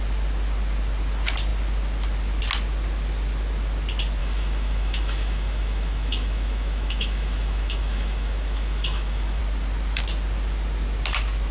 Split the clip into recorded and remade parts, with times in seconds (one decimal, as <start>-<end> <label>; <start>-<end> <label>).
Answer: 0.0-4.2 recorded; 4.2-9.4 remade; 9.4-11.5 recorded